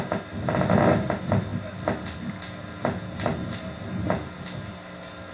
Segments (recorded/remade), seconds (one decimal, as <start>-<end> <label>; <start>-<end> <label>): 0.0-5.3 recorded